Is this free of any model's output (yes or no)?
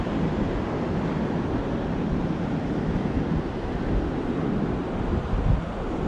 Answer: yes